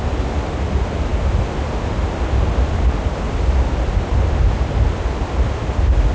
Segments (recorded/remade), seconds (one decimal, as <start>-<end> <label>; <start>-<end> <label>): 0.0-6.1 recorded